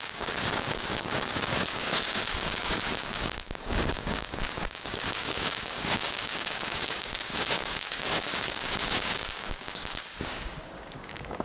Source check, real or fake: fake